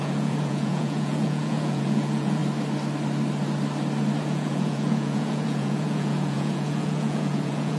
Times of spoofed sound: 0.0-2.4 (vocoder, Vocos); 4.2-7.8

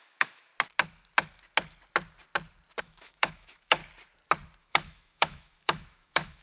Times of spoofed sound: 0.0-0.5 (autoencoder, DAC-VAE); 2.8-3.8; 4.6-6.4